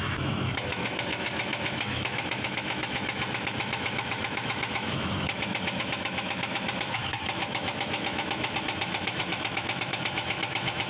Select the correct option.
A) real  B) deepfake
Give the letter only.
B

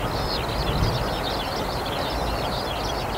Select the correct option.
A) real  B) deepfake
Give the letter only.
A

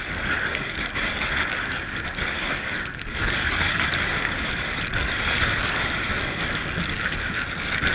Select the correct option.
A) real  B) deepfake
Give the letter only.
B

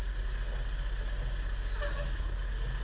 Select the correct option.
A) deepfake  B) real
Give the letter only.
B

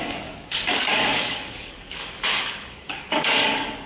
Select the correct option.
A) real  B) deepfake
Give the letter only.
B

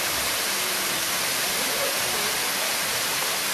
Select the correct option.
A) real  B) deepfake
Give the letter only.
A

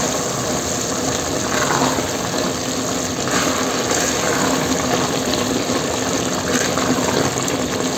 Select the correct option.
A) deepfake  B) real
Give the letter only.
B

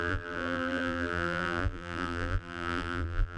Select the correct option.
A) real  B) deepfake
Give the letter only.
B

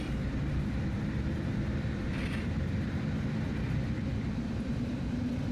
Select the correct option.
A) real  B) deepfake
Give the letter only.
B